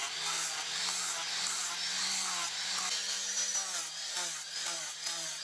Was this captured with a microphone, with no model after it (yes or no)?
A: yes